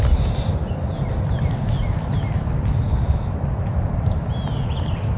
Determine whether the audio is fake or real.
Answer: real